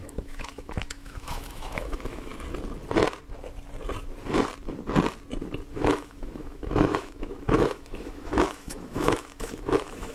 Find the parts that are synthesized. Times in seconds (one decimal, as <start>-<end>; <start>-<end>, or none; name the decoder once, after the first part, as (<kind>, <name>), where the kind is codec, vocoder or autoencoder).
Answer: 0.0-2.3 (autoencoder, DAC-VAE); 5.7-10.1